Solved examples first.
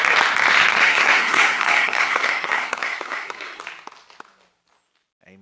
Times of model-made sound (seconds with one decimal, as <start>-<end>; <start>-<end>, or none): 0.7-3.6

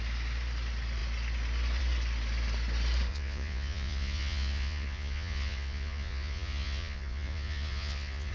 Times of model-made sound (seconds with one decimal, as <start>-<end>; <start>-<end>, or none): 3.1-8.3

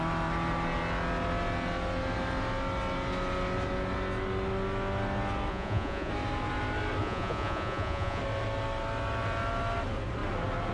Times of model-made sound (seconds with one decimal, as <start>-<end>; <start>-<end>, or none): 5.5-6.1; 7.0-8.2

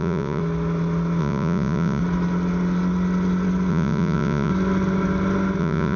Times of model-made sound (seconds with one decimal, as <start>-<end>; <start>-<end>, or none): 0.0-0.4; 1.2-2.0; 3.7-4.5; 5.6-6.0

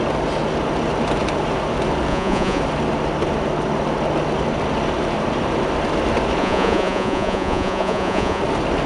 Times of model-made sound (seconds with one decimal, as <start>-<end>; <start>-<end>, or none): 2.1-2.6; 6.4-8.4